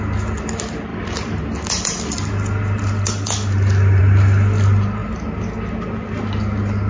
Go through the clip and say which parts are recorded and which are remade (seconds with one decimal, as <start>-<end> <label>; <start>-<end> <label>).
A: 0.0-6.9 recorded